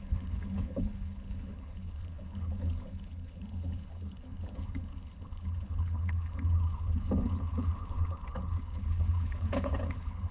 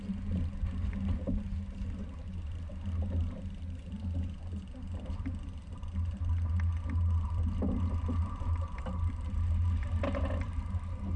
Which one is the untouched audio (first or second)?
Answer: second